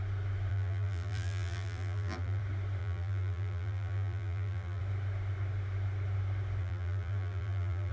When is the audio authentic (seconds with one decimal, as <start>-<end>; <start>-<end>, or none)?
0.0-0.5; 2.4-2.8; 4.8-6.6